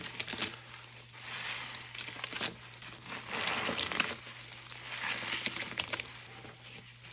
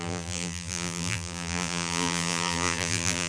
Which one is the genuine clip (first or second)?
first